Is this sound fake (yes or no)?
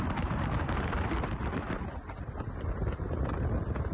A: yes